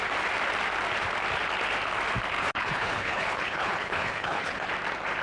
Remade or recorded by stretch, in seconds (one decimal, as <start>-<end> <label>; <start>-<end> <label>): 0.0-2.4 recorded; 2.4-4.7 remade; 4.7-5.2 recorded